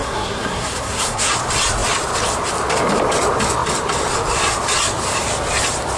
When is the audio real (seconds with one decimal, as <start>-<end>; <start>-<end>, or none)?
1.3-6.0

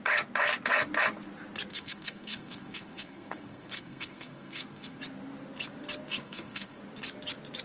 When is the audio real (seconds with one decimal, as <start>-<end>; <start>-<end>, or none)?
0.0-1.7; 5.0-6.1; 6.8-7.6

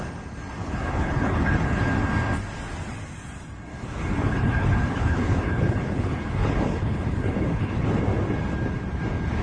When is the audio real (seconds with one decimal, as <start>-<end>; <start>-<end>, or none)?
0.0-0.6; 1.9-3.7; 8.0-9.4

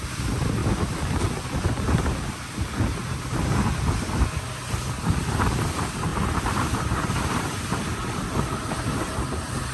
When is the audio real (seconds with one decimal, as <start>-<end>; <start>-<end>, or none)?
0.6-1.3; 3.6-4.7

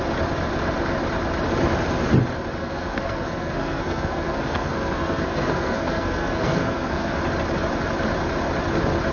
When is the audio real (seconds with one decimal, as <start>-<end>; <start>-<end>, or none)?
0.0-2.6; 7.2-9.1